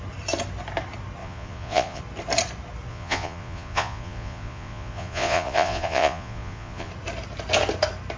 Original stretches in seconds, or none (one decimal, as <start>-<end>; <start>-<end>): 0.0-1.2; 2.0-2.9; 6.9-8.2